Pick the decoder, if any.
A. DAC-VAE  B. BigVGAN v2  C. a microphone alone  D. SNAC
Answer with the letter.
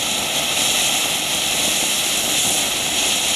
B